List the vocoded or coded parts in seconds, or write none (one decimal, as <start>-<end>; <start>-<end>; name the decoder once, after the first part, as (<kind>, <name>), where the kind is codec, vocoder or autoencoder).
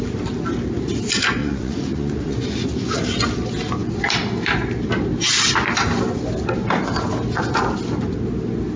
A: 1.4-3.0 (vocoder, Vocos)